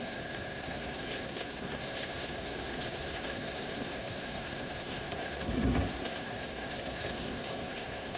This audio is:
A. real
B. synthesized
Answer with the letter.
B